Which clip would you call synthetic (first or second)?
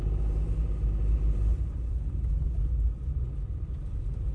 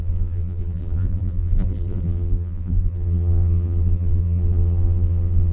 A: second